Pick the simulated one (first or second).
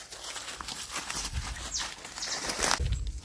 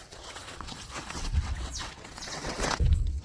second